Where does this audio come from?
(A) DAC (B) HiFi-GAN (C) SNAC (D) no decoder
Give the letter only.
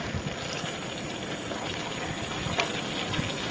D